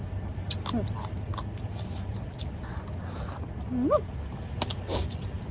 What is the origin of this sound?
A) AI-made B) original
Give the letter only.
B